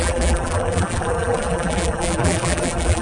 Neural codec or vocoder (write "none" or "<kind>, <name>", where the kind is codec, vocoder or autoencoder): vocoder, BigVGAN v2